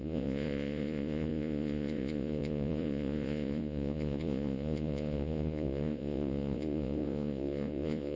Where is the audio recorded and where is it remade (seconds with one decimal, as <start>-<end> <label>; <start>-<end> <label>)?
0.0-8.2 remade